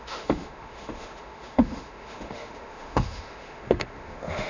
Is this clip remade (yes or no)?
yes